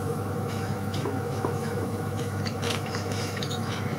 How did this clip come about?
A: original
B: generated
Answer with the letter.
B